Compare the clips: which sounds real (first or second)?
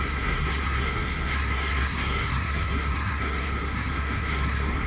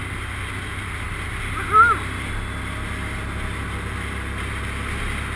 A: second